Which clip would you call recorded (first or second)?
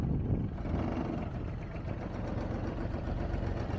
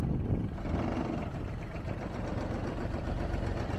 first